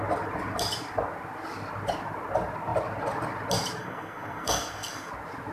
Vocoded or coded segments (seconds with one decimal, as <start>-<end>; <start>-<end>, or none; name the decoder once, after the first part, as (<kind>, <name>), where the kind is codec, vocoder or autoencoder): 3.8-5.1 (codec, SNAC)